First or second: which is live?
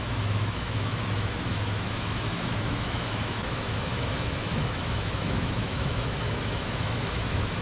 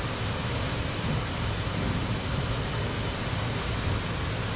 second